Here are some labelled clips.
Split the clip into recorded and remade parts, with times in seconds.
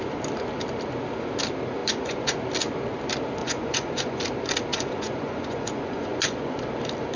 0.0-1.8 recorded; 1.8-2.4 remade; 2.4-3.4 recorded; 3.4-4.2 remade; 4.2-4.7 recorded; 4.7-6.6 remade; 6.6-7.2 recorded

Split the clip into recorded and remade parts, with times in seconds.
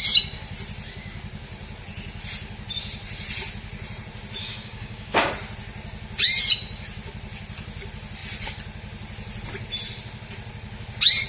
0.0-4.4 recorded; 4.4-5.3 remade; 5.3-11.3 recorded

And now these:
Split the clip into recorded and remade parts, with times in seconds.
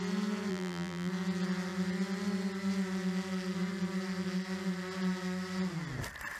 0.0-0.5 recorded; 0.5-1.1 remade; 1.1-6.4 recorded